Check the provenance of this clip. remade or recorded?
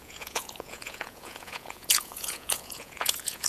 remade